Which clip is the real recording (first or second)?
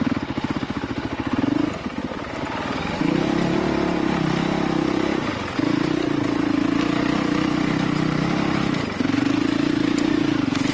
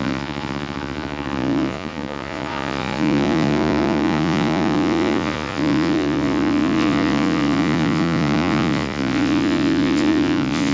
first